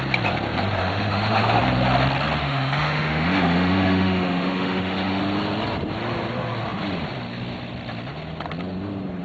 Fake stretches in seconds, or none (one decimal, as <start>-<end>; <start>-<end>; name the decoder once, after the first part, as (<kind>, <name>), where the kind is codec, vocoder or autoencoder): 0.8-1.6 (autoencoder, DAC-VAE); 2.4-5.2